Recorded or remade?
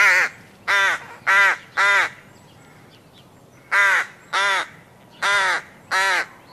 recorded